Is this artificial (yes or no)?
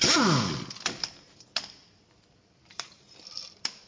no